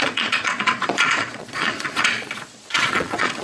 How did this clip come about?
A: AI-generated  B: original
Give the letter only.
A